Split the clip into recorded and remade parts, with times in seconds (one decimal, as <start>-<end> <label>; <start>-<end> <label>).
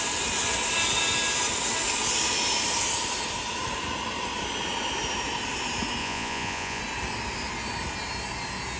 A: 0.0-6.0 recorded; 6.0-6.8 remade; 6.8-8.8 recorded